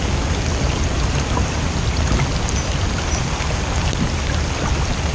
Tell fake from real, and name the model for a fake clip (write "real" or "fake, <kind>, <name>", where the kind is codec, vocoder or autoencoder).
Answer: real